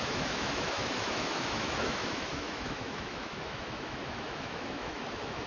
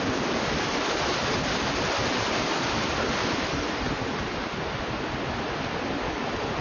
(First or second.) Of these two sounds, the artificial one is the first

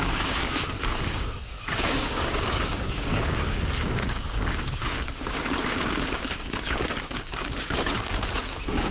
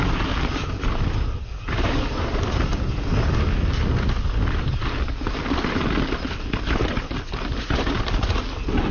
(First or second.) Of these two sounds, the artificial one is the first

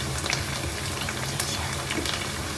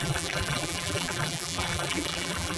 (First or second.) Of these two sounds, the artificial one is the second